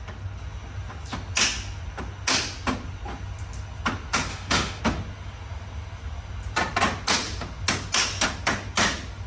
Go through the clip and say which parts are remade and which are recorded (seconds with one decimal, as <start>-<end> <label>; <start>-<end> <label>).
0.0-4.3 recorded; 4.3-4.8 remade; 4.8-9.3 recorded